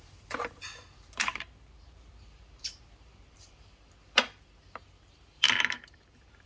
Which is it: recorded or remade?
remade